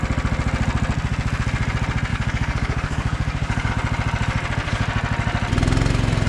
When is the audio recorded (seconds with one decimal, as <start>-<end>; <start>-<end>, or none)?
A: 0.0-2.1; 3.7-6.3